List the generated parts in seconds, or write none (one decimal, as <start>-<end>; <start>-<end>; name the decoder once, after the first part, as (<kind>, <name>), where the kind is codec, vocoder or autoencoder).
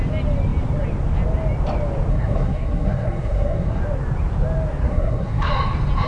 2.1-3.8 (codec, SNAC); 4.9-5.5